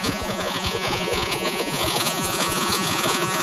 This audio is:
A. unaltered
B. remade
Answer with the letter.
B